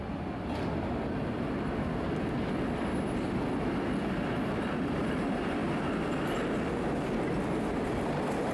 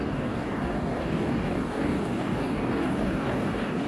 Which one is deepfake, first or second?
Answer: second